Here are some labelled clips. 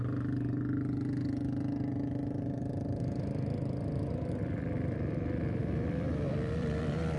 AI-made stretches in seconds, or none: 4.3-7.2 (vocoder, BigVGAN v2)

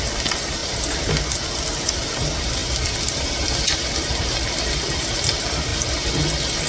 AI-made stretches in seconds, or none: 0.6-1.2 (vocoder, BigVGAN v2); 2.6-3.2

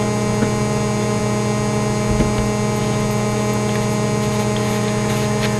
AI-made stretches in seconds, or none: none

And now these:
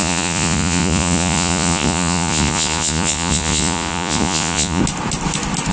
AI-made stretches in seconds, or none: 0.0-4.8 (vocoder, Vocos)

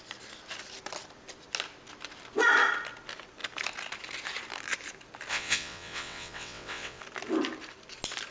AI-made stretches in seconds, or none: 5.3-7.0 (vocoder, WaveNeXt)

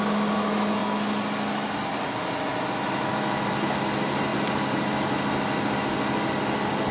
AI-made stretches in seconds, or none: none

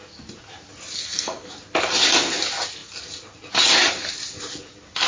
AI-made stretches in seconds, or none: 1.0-1.5 (codec, SNAC)

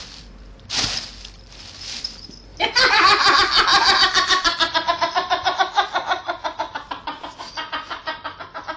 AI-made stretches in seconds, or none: 2.5-6.9 (vocoder, BigVGAN v2)